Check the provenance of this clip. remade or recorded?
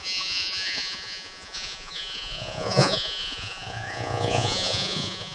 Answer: remade